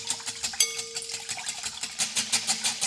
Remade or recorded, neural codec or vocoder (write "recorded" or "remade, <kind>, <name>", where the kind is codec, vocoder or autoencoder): recorded